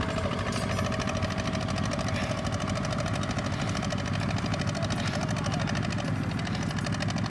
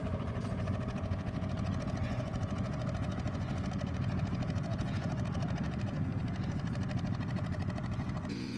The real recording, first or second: first